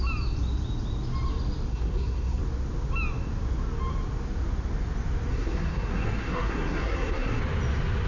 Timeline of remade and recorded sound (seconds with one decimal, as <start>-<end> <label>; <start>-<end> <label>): 0.0-1.7 recorded; 1.7-2.4 remade; 2.4-5.3 recorded; 5.3-7.4 remade; 7.4-8.1 recorded